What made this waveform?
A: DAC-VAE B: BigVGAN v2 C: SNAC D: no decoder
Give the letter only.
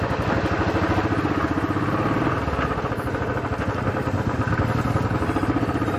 D